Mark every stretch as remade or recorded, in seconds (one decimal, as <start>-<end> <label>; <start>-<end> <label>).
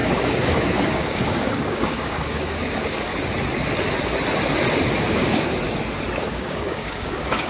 0.0-3.1 remade; 3.1-5.0 recorded; 5.0-5.6 remade; 5.6-6.2 recorded; 6.2-7.5 remade